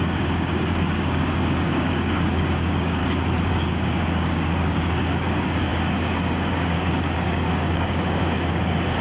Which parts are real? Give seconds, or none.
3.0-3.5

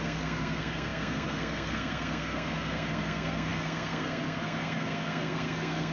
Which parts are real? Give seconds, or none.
none